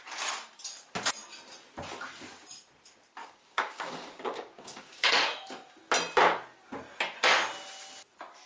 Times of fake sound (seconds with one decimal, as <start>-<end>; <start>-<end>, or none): 3.2-5.1